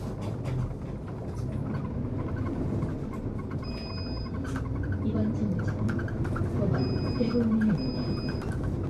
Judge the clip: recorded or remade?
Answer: recorded